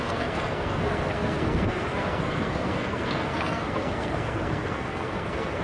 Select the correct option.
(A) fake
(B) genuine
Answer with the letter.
A